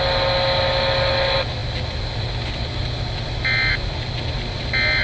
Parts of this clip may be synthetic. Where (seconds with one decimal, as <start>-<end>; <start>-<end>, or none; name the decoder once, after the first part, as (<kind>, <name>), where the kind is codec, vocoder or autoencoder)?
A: none